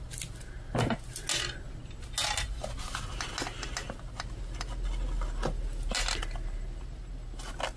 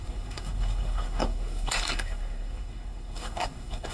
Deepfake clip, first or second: second